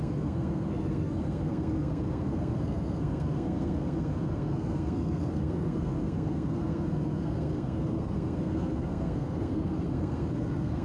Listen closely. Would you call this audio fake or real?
fake